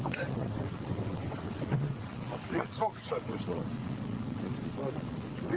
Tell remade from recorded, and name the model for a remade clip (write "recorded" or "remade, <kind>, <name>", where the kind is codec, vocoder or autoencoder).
remade, vocoder, WaveNeXt